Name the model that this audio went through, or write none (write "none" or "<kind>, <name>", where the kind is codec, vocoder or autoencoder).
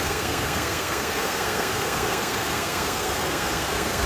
codec, SNAC